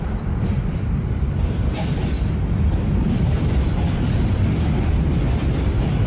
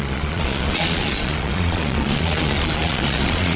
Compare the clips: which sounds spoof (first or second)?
second